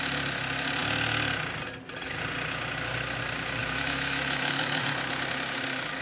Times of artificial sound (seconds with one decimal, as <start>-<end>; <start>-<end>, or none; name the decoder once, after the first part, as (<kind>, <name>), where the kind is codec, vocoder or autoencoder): 3.6-4.6 (autoencoder, DAC-VAE)